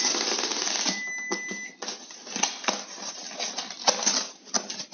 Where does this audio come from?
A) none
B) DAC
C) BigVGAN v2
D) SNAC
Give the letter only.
A